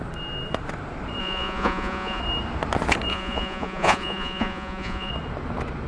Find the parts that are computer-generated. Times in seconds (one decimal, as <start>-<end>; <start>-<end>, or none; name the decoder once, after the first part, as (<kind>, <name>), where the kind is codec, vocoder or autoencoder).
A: 1.2-2.2 (vocoder, Vocos); 3.1-5.1